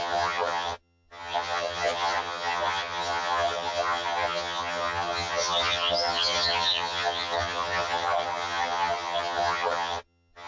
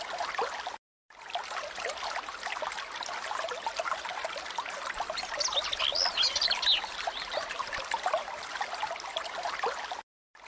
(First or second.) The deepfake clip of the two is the first